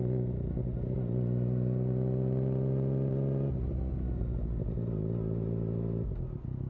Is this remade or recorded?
recorded